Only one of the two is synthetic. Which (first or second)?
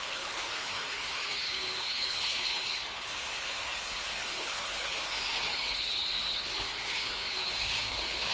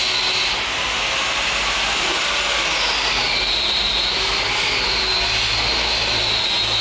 first